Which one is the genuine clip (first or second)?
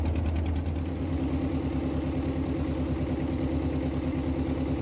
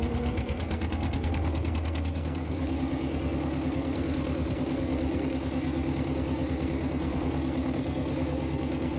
first